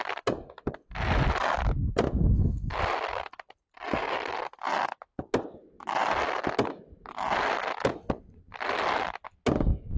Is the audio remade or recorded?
recorded